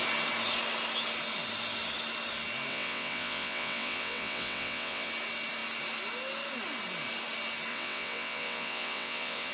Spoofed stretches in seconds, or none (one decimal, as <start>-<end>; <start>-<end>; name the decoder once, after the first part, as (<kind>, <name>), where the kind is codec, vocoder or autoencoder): 2.7-5.1 (vocoder, WaveNeXt); 7.7-9.5